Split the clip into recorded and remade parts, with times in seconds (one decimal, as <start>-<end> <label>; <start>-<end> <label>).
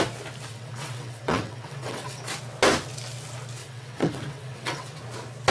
0.0-0.5 recorded; 0.5-2.2 remade; 2.2-3.6 recorded; 3.6-5.0 remade; 5.0-5.5 recorded